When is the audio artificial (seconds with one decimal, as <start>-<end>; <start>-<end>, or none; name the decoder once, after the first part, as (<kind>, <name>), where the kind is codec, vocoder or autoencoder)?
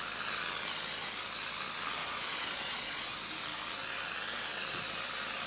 2.0-3.1 (vocoder, Vocos)